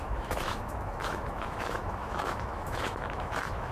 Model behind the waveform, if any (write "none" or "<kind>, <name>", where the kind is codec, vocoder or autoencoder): autoencoder, DAC-VAE